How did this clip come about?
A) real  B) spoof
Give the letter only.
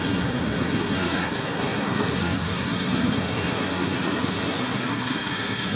B